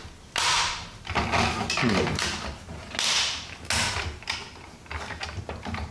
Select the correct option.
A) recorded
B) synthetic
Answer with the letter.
A